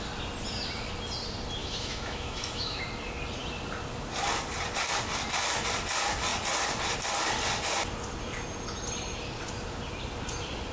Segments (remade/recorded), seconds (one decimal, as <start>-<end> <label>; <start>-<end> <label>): 0.0-1.6 recorded; 1.6-2.8 remade; 2.8-10.7 recorded